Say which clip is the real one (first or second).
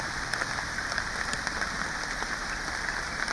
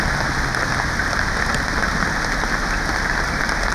second